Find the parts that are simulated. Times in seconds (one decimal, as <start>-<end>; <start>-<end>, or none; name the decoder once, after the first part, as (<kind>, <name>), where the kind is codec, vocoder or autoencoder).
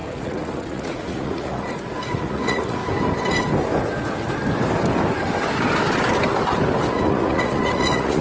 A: 0.0-2.8 (vocoder, Vocos); 6.9-8.2